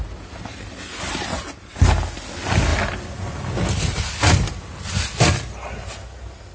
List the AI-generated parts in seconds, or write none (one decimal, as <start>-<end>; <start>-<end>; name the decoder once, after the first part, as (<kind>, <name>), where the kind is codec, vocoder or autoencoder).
none